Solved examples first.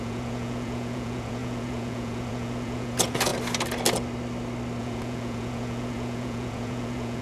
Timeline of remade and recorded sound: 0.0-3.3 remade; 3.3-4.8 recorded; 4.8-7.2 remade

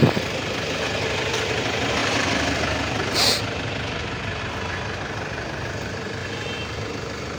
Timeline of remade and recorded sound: 0.0-2.0 recorded; 2.0-4.4 remade; 4.4-6.2 recorded; 6.2-6.9 remade; 6.9-7.4 recorded

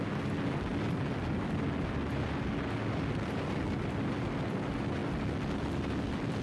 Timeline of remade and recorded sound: 0.0-6.4 recorded

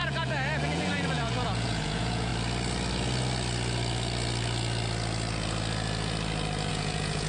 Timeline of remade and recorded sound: 0.0-2.3 remade; 2.3-6.7 recorded; 6.7-7.3 remade

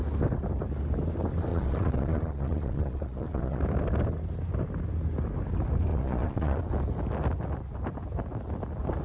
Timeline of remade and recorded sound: 0.0-1.5 recorded; 1.5-3.6 remade; 3.6-5.9 recorded; 5.9-6.6 remade; 6.6-9.0 recorded